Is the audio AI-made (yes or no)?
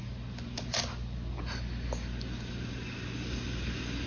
no